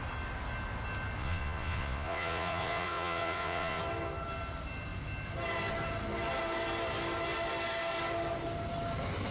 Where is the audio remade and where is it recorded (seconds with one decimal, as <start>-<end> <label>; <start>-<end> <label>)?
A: 0.0-1.2 recorded; 1.2-3.8 remade; 3.8-9.3 recorded